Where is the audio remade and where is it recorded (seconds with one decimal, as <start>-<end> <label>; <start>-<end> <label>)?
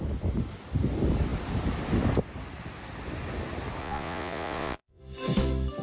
0.0-3.8 recorded; 3.8-5.0 remade; 5.0-5.8 recorded